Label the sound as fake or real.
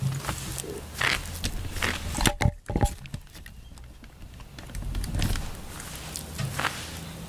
real